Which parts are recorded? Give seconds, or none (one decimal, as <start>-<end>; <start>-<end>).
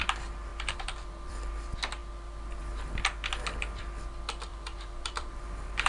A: 0.0-0.5; 1.3-4.5